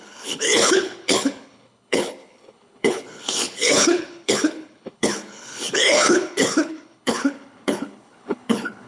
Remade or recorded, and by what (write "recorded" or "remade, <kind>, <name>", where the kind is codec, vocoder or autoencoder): remade, codec, HILCodec